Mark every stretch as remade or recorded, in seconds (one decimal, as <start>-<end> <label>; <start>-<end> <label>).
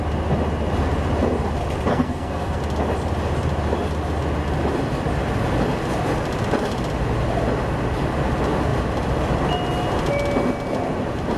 0.0-1.9 recorded; 1.9-2.6 remade; 2.6-11.4 recorded